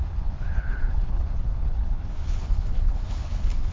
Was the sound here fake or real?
fake